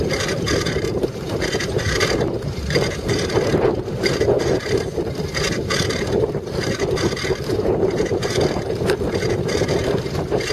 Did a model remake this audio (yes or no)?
yes